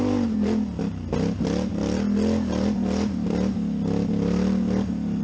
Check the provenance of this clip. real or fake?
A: real